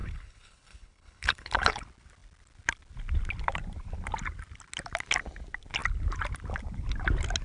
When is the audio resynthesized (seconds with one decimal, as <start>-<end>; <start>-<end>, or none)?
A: 0.0-1.8